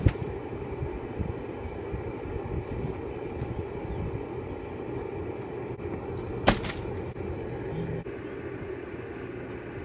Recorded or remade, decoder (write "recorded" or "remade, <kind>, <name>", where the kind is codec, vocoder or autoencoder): recorded